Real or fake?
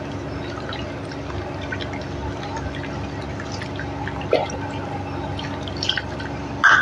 real